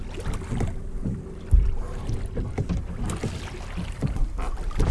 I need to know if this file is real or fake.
real